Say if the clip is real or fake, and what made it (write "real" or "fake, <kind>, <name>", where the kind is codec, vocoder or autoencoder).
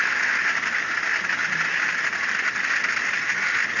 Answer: real